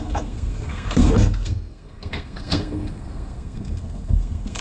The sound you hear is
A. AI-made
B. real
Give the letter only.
A